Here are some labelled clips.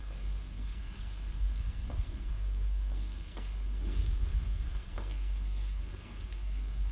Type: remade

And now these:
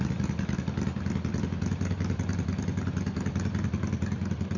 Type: recorded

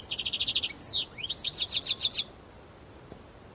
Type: recorded